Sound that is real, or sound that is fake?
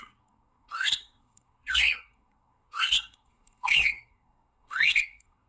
fake